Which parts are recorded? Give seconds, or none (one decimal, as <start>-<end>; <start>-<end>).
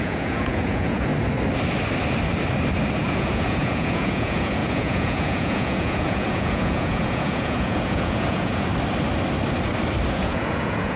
1.1-3.0; 8.7-10.1